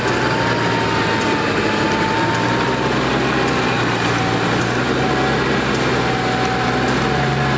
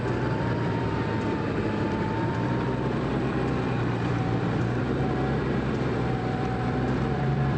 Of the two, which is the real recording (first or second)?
first